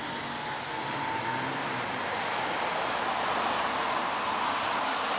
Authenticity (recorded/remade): recorded